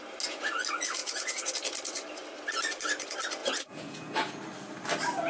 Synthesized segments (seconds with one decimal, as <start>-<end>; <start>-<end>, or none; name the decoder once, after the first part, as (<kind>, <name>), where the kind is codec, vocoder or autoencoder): 1.0-1.5 (vocoder, Vocos); 3.4-4.4